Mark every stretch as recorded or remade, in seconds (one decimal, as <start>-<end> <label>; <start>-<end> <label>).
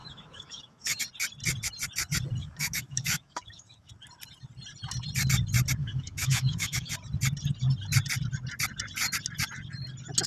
0.0-1.0 remade; 1.0-2.4 recorded; 2.4-3.9 remade; 3.9-5.8 recorded; 5.8-6.9 remade; 6.9-10.3 recorded